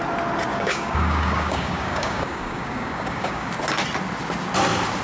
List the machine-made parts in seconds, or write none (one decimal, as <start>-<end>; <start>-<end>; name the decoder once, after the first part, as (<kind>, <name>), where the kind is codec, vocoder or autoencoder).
0.5-3.5 (codec, DAC)